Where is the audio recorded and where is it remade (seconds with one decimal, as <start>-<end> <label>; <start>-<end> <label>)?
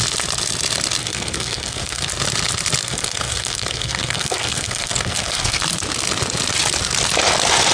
0.0-1.0 recorded; 1.0-2.1 remade; 2.1-2.8 recorded; 2.8-5.6 remade; 5.6-7.7 recorded